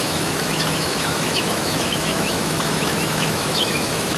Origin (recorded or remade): remade